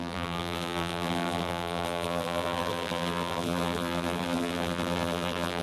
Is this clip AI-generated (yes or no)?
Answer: yes